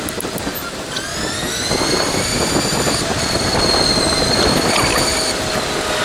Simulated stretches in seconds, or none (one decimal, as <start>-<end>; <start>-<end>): none